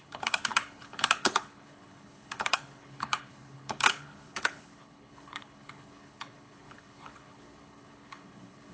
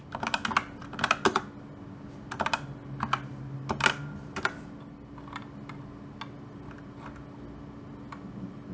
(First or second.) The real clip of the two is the second